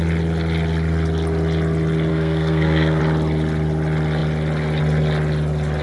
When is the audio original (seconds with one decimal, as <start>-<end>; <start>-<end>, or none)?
0.0-2.1; 3.0-5.8